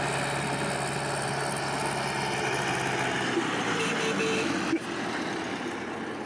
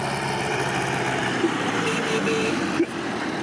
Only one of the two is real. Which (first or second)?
first